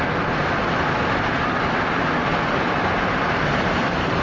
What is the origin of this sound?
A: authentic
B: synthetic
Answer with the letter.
A